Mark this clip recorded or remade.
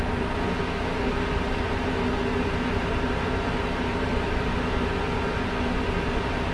recorded